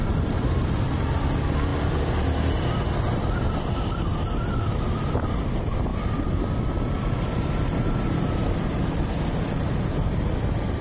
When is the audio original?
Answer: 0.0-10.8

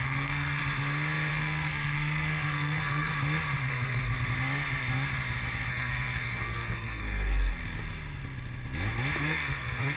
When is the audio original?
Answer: 0.6-1.3; 3.1-3.6; 4.1-5.7; 7.6-9.2